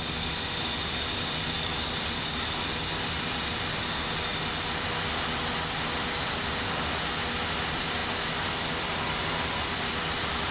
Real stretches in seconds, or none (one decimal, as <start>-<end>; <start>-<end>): 0.0-10.5